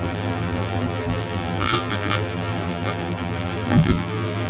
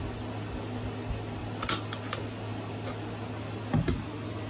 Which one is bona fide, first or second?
second